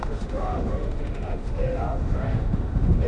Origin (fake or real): fake